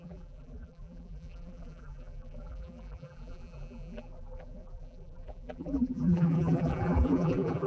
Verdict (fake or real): fake